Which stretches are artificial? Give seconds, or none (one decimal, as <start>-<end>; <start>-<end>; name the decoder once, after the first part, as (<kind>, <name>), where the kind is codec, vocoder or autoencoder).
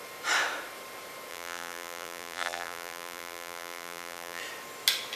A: 1.3-4.4 (vocoder, BigVGAN v2)